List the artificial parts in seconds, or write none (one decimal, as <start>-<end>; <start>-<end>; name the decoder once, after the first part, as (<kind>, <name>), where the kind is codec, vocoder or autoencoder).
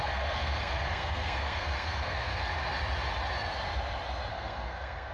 0.0-2.5 (codec, SNAC); 4.3-5.1